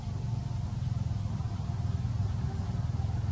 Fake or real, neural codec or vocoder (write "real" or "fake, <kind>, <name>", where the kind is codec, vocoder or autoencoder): real